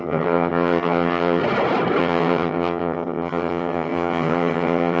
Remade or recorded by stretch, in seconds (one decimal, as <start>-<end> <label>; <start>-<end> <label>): 0.0-1.4 remade; 1.4-2.0 recorded; 2.0-5.0 remade